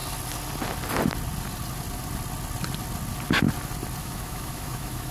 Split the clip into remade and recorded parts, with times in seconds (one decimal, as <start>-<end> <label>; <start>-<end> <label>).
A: 0.0-4.0 recorded; 4.0-5.1 remade